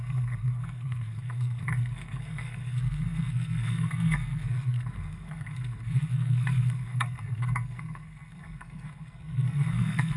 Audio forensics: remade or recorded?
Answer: remade